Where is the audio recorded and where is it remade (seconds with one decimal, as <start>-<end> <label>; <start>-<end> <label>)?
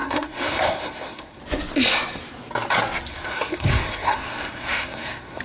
0.0-1.4 remade; 1.4-3.1 recorded; 3.1-5.4 remade